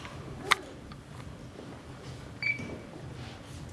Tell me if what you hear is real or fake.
fake